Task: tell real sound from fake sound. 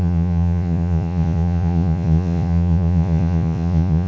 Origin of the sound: fake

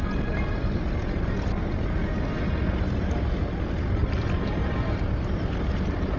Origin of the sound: real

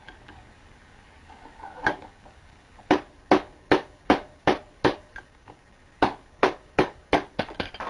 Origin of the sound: fake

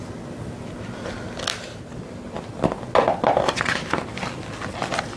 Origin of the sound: real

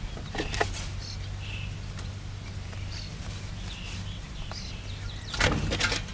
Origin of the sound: real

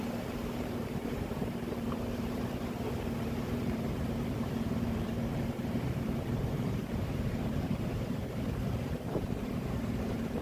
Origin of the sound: fake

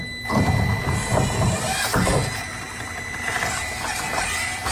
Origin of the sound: real